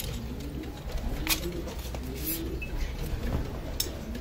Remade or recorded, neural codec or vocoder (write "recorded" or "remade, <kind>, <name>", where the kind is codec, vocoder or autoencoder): recorded